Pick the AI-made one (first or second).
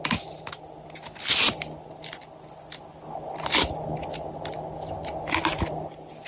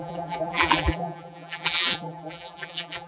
second